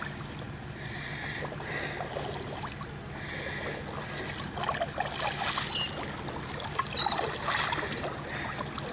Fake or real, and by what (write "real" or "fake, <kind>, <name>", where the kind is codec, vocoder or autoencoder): real